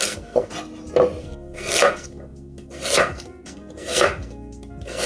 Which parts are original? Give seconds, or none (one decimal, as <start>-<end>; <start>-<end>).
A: 0.5-1.2